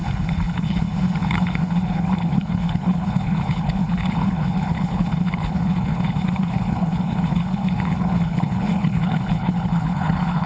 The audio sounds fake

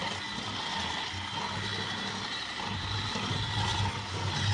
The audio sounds real